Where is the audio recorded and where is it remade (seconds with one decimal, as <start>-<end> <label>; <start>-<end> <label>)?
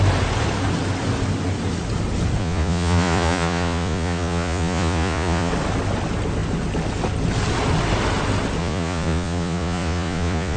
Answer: 0.0-2.4 recorded; 2.4-5.5 remade; 5.5-8.6 recorded; 8.6-10.6 remade